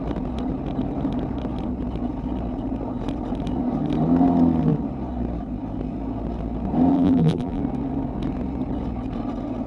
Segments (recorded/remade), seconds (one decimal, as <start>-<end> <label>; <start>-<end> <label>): 0.0-6.9 recorded; 6.9-7.6 remade; 7.6-9.7 recorded